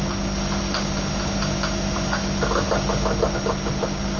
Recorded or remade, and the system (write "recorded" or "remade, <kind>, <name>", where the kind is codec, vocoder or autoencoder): recorded